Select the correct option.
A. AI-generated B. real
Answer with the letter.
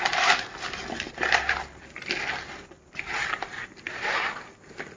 B